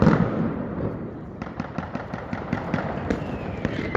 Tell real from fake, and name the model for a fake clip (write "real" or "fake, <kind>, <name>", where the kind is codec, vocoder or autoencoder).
fake, vocoder, BigVGAN v2